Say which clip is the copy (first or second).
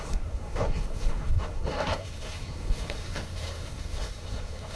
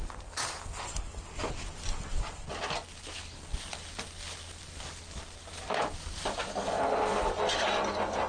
first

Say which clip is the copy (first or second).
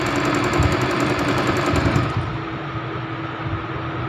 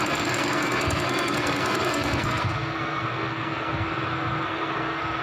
second